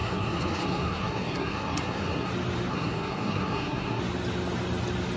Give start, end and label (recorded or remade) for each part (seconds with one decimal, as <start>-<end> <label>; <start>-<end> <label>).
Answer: 0.0-2.3 remade; 2.3-2.7 recorded; 2.7-4.0 remade; 4.0-5.2 recorded